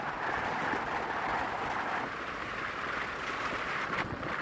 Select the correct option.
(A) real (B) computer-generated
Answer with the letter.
A